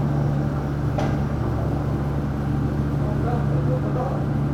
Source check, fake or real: real